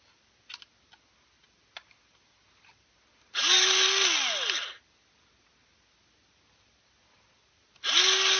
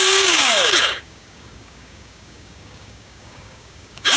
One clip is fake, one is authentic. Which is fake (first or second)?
second